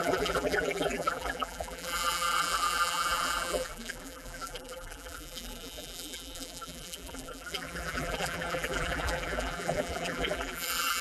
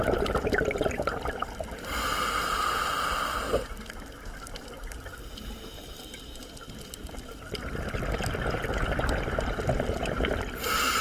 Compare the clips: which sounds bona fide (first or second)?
second